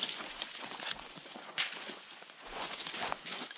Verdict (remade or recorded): remade